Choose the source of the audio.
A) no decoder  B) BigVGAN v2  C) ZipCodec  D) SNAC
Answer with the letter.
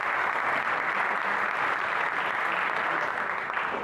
A